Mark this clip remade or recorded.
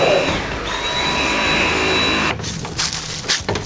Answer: recorded